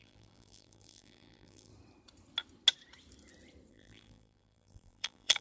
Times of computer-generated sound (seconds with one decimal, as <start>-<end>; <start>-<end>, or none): 0.0-1.7; 3.7-5.4